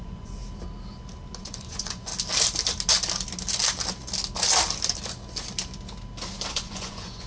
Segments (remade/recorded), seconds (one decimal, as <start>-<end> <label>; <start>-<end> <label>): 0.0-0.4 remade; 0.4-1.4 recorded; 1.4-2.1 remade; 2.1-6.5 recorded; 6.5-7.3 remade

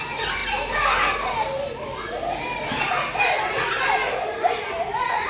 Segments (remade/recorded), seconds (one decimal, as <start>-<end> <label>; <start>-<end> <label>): 0.0-5.3 recorded

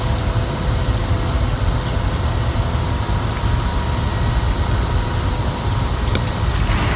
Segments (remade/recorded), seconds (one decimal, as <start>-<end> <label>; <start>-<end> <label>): 0.0-7.0 recorded

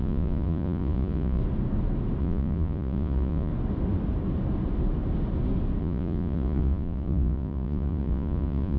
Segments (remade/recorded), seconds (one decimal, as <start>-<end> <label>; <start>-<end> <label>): 0.0-1.4 remade; 1.4-2.2 recorded; 2.2-3.5 remade; 3.5-5.8 recorded; 5.8-8.8 remade

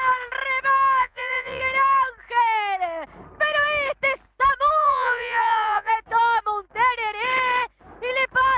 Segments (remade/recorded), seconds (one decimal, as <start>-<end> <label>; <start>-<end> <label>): 0.0-1.0 recorded; 1.0-1.6 remade; 1.6-4.8 recorded; 4.8-5.9 remade; 5.9-8.6 recorded

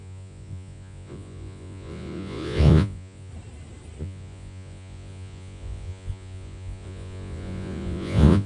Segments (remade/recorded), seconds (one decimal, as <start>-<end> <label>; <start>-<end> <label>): 0.0-3.3 remade; 3.3-4.0 recorded; 4.0-8.5 remade

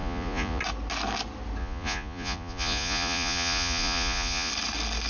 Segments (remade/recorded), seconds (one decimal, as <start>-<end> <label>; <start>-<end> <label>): 0.0-0.6 remade; 0.6-1.6 recorded; 1.6-4.5 remade; 4.5-5.1 recorded